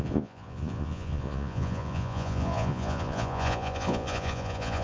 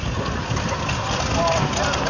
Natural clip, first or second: second